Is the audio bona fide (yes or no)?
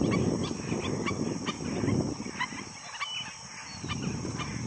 yes